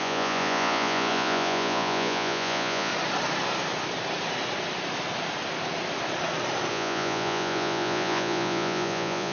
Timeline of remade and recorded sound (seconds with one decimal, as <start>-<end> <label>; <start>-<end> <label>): 0.0-2.9 remade; 2.9-6.7 recorded; 6.7-9.3 remade